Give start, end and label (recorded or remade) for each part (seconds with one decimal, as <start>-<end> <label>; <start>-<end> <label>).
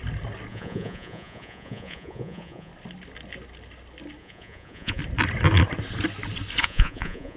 0.0-0.5 recorded; 0.5-2.7 remade; 2.7-4.2 recorded; 4.2-5.0 remade; 5.0-6.6 recorded; 6.6-7.4 remade